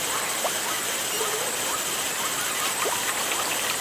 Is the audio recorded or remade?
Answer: recorded